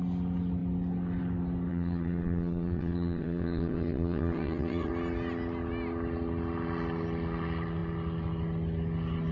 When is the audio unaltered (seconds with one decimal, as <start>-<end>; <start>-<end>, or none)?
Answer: 0.0-1.7; 4.9-9.3